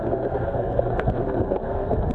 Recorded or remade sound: remade